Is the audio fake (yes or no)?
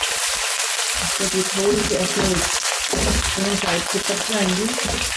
no